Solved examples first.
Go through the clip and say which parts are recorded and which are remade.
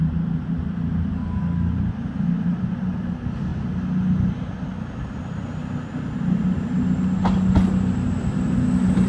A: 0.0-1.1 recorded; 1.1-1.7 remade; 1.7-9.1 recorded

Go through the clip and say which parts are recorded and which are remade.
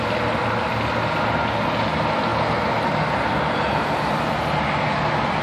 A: 0.0-5.4 recorded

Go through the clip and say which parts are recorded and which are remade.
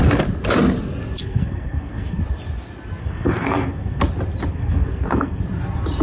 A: 0.0-1.2 recorded; 1.2-2.2 remade; 2.2-3.0 recorded; 3.0-4.0 remade; 4.0-4.5 recorded; 4.5-5.4 remade; 5.4-6.0 recorded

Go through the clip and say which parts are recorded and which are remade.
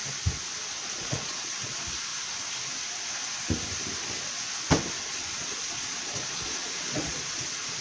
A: 0.0-0.7 recorded; 0.7-2.1 remade; 2.1-5.1 recorded; 5.1-7.8 remade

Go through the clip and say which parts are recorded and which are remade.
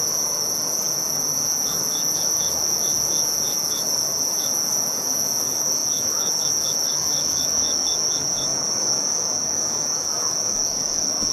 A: 0.0-11.3 remade